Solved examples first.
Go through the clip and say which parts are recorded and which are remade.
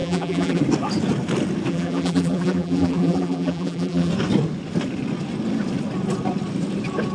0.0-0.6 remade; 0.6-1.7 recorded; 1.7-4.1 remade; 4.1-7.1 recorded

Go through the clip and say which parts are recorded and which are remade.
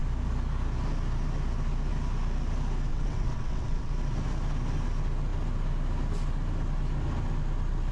0.0-2.9 recorded; 2.9-3.9 remade; 3.9-7.9 recorded